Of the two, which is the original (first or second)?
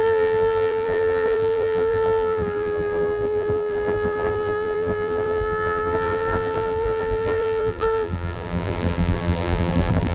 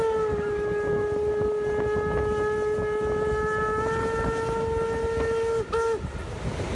second